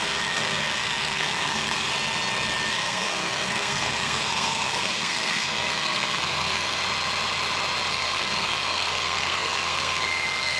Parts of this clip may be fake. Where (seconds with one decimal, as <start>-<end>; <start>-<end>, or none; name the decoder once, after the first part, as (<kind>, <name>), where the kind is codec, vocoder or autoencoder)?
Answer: 0.0-1.9 (codec, SNAC); 2.7-6.8; 7.9-10.6